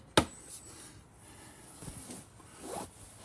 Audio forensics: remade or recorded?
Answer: recorded